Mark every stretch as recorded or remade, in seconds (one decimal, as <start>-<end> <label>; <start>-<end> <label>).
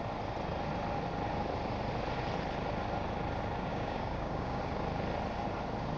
0.0-3.7 recorded; 3.7-4.6 remade; 4.6-6.0 recorded